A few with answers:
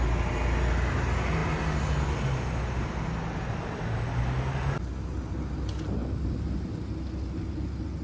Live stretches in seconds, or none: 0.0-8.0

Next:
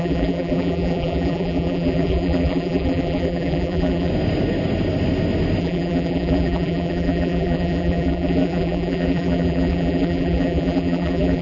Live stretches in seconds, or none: 4.1-5.6

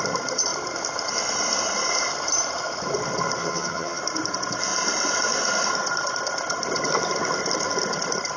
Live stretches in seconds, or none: 0.0-3.4; 4.0-8.4

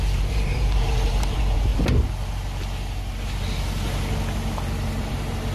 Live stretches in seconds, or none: 1.7-5.0

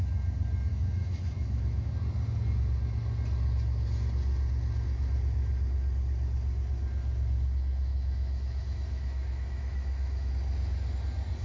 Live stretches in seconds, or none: 0.0-0.7; 1.9-7.9; 10.3-11.4